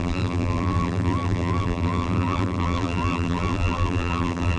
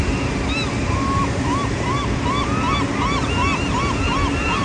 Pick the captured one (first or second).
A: second